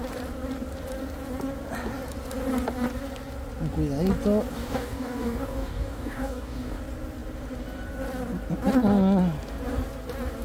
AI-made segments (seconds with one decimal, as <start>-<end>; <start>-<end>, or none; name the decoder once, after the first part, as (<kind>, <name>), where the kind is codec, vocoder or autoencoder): 4.5-6.8 (codec, DAC)